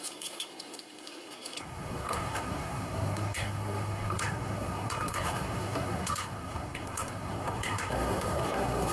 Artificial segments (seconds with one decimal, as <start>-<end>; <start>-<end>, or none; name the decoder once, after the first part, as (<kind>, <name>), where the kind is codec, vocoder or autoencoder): 0.0-8.9 (codec, SNAC)